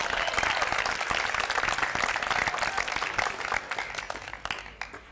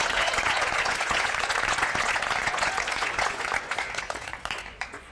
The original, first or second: first